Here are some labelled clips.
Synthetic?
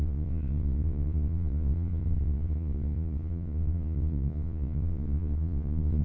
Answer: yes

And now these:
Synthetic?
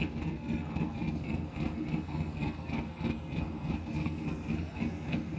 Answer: yes